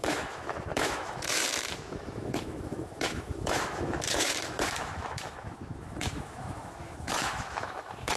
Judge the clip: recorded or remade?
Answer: remade